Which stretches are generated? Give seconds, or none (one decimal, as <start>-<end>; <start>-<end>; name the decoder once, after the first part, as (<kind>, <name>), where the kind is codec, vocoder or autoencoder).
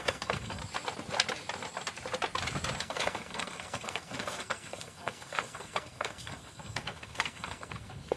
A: 0.0-0.6 (codec, SNAC); 2.8-8.2